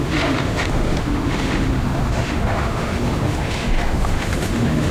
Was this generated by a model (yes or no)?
yes